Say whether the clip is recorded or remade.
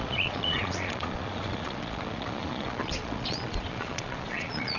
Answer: remade